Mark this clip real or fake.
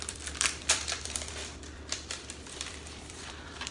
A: fake